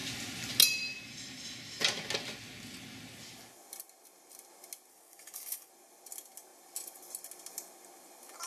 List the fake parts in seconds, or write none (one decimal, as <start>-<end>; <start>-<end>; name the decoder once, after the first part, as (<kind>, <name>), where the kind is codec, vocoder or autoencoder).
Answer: 4.9-5.7 (codec, DAC)